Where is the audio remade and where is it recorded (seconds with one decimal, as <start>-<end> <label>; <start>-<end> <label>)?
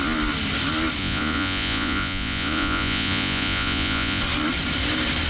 0.0-1.0 recorded; 1.0-4.2 remade; 4.2-5.3 recorded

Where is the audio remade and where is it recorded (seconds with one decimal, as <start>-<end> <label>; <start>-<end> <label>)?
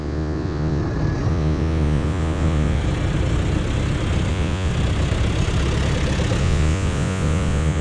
0.0-0.8 remade; 0.8-1.3 recorded; 1.3-2.8 remade; 2.8-4.3 recorded; 4.3-4.7 remade; 4.7-6.4 recorded; 6.4-7.8 remade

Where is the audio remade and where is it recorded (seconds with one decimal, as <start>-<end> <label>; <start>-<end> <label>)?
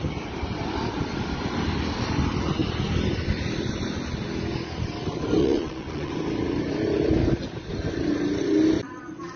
0.0-5.4 recorded; 5.4-6.1 remade; 6.1-9.4 recorded